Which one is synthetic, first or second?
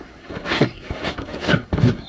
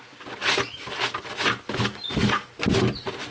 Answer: first